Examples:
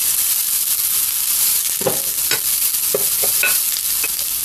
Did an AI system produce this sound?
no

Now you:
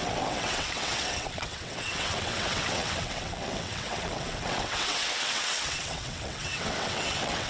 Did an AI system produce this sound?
yes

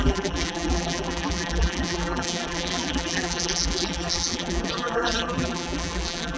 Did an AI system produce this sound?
yes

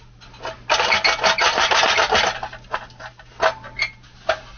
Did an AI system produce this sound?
no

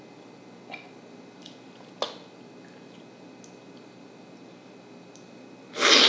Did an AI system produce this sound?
no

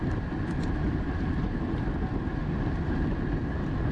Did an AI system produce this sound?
no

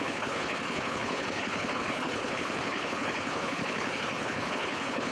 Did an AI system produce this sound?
yes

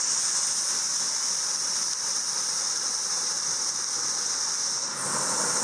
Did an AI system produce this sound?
no